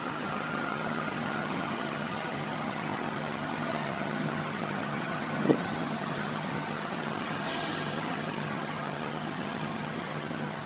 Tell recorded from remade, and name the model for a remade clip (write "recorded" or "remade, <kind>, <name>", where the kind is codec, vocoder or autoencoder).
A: remade, vocoder, HiFi-GAN